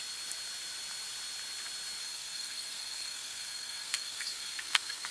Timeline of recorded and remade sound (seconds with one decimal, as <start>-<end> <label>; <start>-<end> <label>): 0.0-2.0 recorded; 2.0-5.1 remade